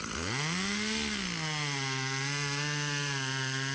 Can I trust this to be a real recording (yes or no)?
yes